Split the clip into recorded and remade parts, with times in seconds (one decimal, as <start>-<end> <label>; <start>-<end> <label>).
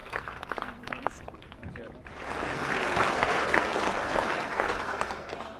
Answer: 0.0-1.6 remade; 1.6-2.3 recorded; 2.3-5.6 remade